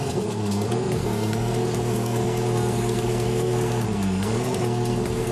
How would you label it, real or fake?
fake